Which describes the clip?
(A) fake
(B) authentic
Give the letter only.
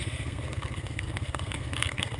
A